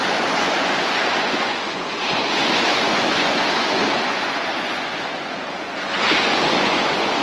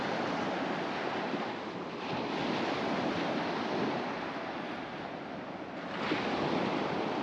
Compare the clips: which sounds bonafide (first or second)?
second